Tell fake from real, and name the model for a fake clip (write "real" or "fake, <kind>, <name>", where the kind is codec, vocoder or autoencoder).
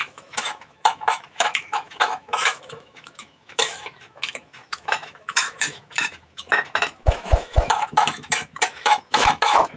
fake, autoencoder, DAC-VAE